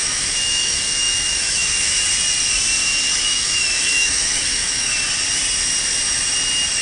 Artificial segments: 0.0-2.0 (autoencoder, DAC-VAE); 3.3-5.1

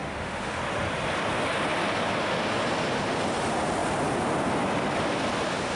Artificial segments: 0.0-0.6 (autoencoder, DAC-VAE)

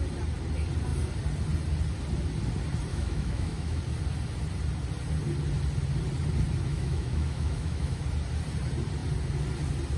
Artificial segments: 2.9-3.8 (autoencoder, DAC-VAE); 6.7-8.0

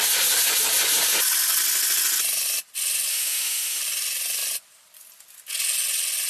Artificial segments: 3.1-3.8 (autoencoder, DAC-VAE)

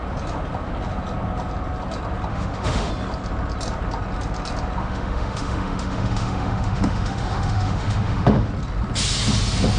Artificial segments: 2.3-2.9 (autoencoder, DAC-VAE); 4.8-8.5

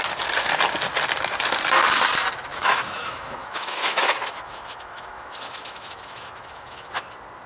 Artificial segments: 2.5-6.9 (autoencoder, DAC-VAE)